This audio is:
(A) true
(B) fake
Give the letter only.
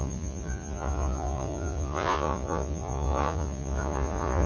B